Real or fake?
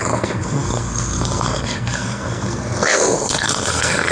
fake